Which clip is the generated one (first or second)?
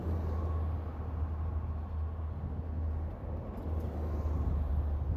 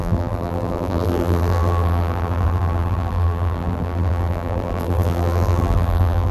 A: second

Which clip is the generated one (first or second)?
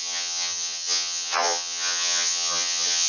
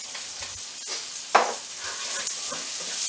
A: first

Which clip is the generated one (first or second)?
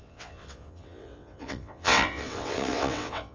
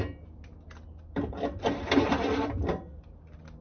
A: first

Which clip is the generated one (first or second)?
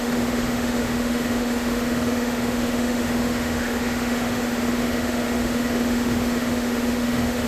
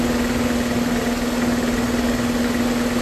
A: first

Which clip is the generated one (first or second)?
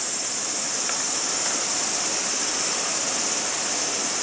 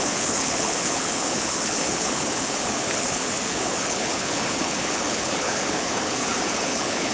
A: second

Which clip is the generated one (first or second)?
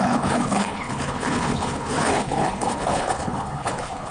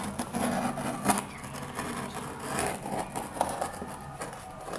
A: first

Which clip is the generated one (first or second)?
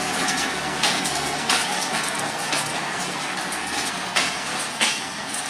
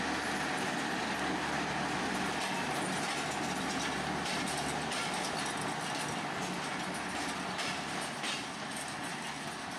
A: first